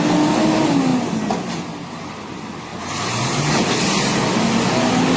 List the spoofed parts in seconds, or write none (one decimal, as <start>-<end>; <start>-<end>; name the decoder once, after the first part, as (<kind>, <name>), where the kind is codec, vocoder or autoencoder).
none